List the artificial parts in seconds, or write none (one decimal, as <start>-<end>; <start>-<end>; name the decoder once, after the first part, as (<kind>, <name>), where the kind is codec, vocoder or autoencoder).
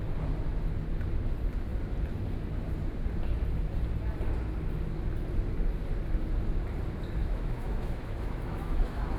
7.2-9.2 (autoencoder, DAC-VAE)